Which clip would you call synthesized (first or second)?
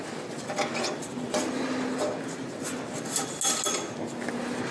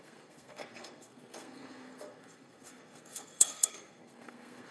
second